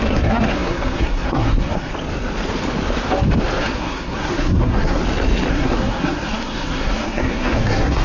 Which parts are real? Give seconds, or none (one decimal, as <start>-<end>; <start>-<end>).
1.9-3.6; 5.0-5.5